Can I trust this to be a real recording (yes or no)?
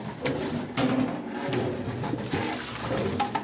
yes